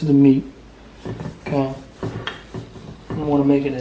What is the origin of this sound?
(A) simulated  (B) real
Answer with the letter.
B